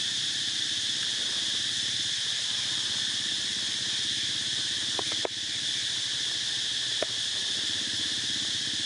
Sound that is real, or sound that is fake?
real